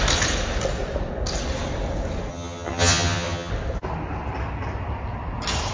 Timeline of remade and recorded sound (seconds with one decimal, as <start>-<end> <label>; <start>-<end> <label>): 0.0-2.3 recorded; 2.3-3.5 remade; 3.5-5.7 recorded